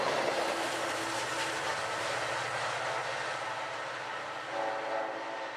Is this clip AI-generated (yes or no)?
no